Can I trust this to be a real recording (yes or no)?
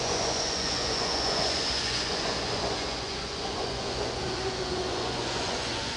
no